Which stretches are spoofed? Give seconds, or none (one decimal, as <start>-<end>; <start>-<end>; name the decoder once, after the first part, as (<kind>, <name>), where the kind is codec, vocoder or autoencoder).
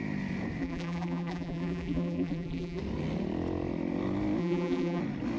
0.6-2.8 (vocoder, BigVGAN v2); 4.4-5.0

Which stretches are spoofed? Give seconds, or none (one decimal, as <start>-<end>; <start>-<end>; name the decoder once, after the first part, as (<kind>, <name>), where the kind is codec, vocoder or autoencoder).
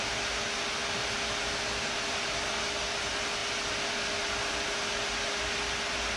none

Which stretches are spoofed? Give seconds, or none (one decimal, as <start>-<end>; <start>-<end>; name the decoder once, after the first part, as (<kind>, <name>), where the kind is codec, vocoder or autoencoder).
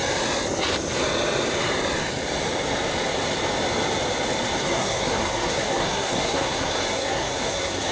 4.6-7.9 (codec, SNAC)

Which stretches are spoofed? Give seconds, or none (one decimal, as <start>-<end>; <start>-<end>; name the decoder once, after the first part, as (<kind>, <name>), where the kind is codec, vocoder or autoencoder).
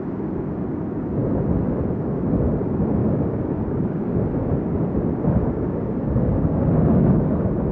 3.0-4.0 (codec, DAC); 5.4-7.2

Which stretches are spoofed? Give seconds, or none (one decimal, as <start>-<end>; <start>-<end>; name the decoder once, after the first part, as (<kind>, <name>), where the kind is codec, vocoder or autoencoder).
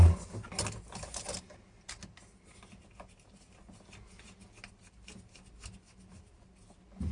none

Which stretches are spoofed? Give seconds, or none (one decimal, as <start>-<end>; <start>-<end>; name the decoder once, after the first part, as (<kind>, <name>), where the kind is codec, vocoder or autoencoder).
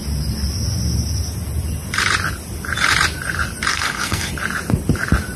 3.7-4.3 (codec, SNAC)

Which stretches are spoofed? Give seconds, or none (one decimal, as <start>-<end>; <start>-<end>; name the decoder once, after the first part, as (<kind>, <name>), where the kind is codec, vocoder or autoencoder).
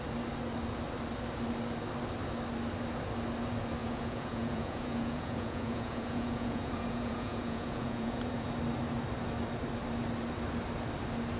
3.8-8.5 (vocoder, Vocos)